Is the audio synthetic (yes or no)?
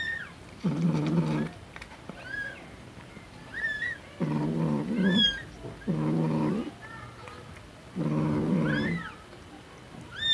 no